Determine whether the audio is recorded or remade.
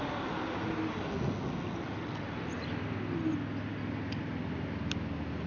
recorded